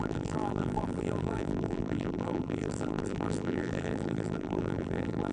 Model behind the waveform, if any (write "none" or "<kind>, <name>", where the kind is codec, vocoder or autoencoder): vocoder, BigVGAN v2